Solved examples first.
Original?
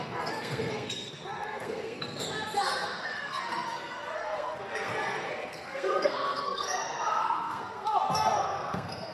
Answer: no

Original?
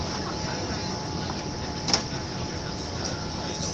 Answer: yes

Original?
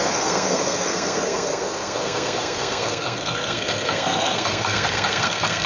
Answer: no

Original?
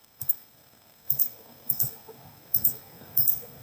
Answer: no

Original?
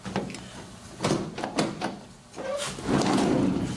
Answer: yes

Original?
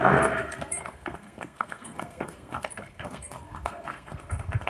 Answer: no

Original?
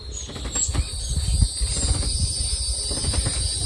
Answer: yes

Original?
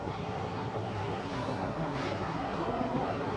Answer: no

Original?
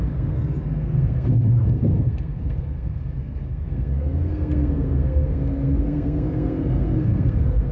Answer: no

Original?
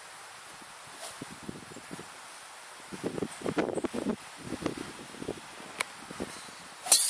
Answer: yes